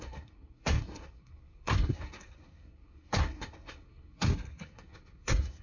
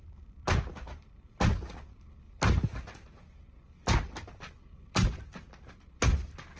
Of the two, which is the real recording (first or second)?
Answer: second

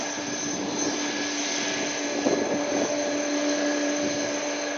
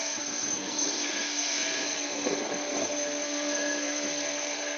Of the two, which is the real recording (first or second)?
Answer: first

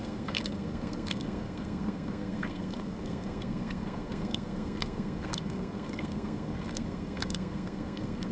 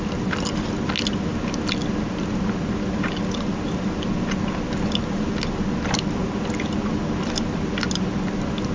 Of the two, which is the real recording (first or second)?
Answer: second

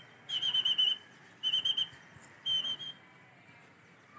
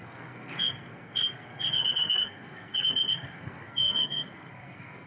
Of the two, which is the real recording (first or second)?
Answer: first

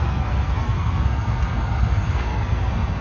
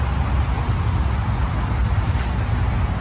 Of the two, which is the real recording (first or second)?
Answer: second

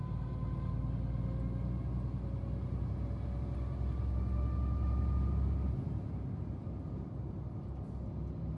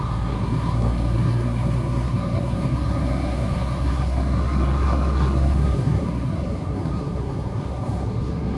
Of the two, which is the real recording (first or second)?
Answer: first